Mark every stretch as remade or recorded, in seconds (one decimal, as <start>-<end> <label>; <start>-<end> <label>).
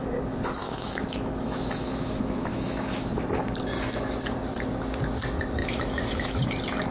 0.0-0.6 recorded; 0.6-3.1 remade; 3.1-5.6 recorded; 5.6-6.4 remade; 6.4-6.9 recorded